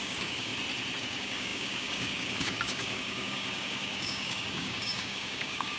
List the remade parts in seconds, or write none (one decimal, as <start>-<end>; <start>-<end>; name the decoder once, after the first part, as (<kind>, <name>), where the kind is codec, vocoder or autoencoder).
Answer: 0.0-0.5 (codec, DAC); 1.0-5.8